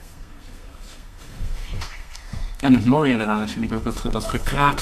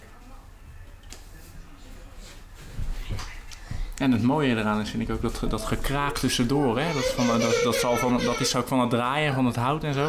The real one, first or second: second